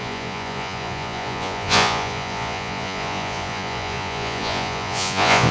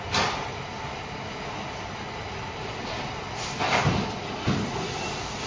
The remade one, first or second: first